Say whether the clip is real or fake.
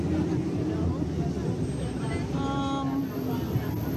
real